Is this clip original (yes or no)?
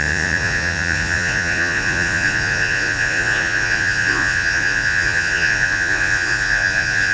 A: no